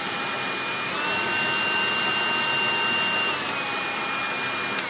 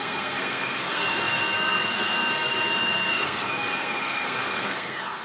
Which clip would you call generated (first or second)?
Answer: second